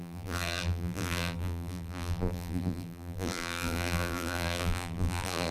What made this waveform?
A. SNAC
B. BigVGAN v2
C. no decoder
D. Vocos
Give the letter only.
B